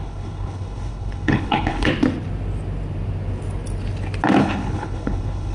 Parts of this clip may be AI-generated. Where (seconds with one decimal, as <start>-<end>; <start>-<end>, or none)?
0.0-1.9; 4.4-5.5